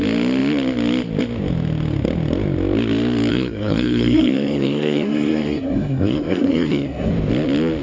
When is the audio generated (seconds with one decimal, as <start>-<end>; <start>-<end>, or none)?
3.3-7.1